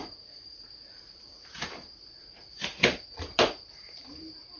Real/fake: fake